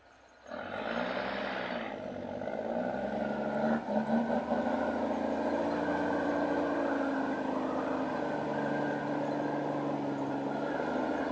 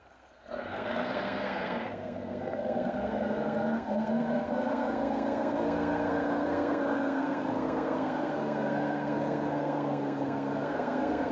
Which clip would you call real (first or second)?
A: first